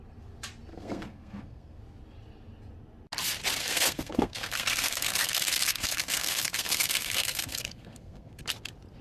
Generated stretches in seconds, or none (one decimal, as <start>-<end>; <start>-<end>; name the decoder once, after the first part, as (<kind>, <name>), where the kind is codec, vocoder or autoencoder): 0.7-1.8 (codec, SNAC); 3.6-8.4